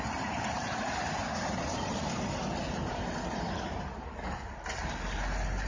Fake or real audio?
real